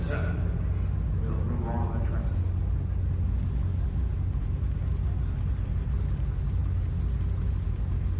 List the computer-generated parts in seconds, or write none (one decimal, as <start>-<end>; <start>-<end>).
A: none